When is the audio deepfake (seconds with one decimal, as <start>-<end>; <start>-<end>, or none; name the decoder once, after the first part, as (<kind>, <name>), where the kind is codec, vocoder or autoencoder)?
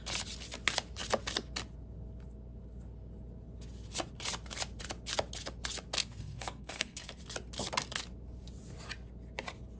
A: 6.0-7.2 (codec, SNAC)